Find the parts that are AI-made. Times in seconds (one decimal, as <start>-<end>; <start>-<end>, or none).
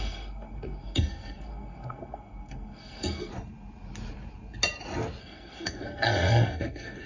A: 0.0-3.3; 5.2-7.1